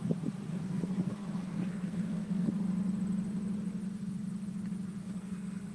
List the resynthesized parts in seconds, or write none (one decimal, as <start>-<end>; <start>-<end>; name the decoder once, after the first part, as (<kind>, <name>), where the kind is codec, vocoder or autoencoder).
0.5-2.5 (codec, SNAC); 5.0-5.7